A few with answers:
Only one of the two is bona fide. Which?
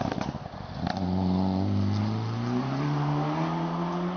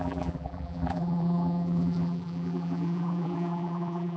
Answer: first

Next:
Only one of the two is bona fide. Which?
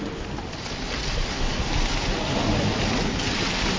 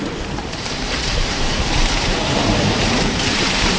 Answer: first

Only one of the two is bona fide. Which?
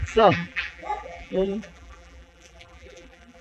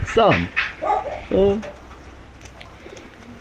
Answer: second